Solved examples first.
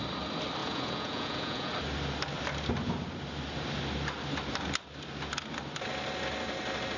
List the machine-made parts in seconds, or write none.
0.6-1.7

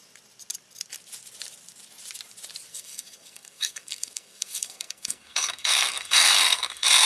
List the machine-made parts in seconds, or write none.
2.7-7.1

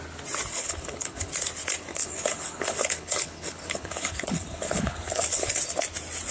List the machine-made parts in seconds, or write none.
0.5-1.3; 1.9-5.6

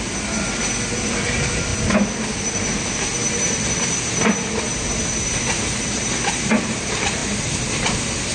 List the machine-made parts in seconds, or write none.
none

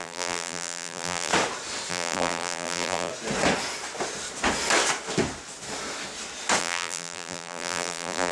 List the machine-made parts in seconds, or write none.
0.0-1.3; 1.9-3.1; 6.6-8.3

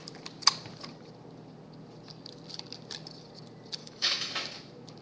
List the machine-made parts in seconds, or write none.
3.8-4.3